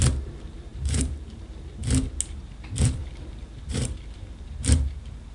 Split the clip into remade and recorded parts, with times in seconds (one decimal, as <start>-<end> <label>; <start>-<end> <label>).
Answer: 0.0-1.8 remade; 1.8-2.5 recorded; 2.5-5.3 remade